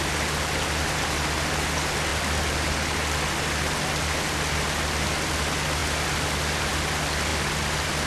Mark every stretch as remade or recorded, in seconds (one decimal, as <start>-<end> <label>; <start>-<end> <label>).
0.0-8.1 recorded